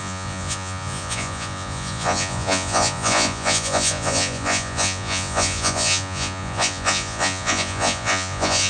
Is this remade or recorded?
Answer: remade